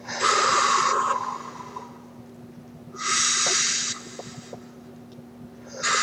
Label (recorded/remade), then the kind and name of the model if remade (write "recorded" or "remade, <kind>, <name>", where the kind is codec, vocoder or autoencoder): recorded